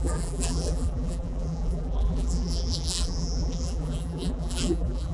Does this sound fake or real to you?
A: fake